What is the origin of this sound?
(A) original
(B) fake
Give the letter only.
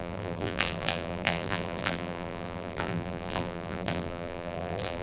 B